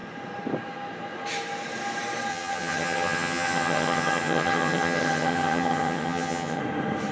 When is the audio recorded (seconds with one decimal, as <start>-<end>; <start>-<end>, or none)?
0.0-2.3; 6.6-7.1